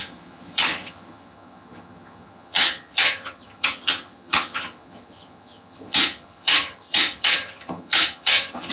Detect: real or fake fake